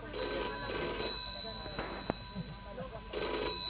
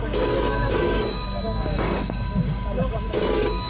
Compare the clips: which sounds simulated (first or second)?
second